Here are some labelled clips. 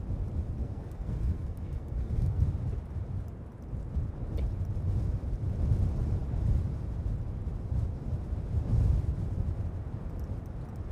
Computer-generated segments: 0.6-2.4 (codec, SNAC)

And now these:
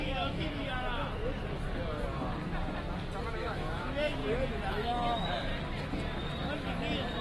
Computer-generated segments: 0.0-1.2 (autoencoder, DAC-VAE); 3.3-4.2; 4.7-5.5

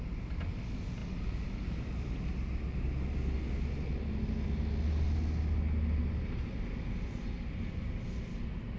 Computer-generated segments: none

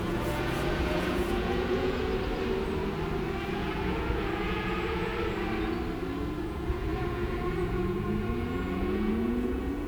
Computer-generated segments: 0.0-2.1 (vocoder, Vocos); 3.5-5.1; 6.4-9.9